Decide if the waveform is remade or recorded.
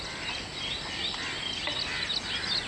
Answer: recorded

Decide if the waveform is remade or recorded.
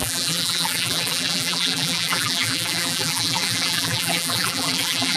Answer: remade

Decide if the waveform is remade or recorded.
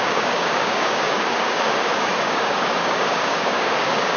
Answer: remade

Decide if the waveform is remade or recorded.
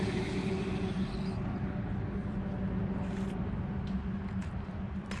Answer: recorded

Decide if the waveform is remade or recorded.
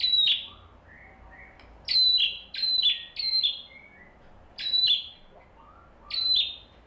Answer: recorded